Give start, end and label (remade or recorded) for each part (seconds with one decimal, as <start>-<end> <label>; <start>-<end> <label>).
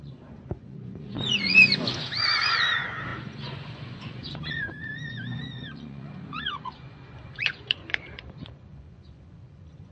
0.0-9.9 remade